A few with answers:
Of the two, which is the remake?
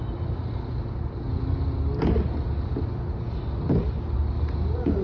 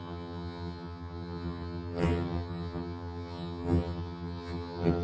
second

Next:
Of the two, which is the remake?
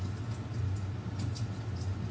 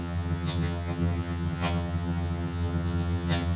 second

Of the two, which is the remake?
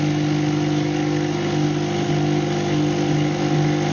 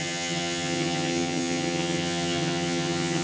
second